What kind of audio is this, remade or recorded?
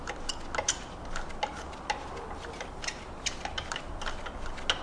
recorded